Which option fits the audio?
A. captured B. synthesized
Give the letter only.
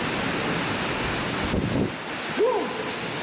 A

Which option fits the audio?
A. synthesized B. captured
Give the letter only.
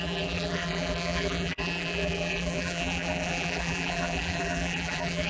A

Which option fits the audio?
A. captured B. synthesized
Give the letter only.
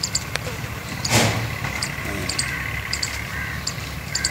B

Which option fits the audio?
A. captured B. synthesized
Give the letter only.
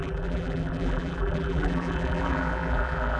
B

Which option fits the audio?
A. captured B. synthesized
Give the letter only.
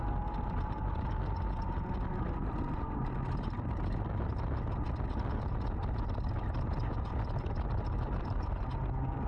A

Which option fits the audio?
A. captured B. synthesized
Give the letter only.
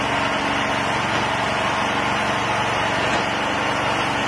A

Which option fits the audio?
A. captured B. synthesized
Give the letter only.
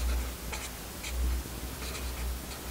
A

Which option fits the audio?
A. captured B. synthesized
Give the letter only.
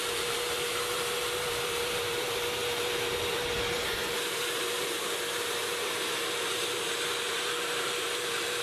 B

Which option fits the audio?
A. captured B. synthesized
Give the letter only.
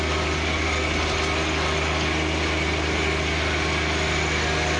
A